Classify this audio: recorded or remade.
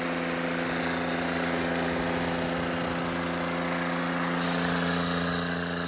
recorded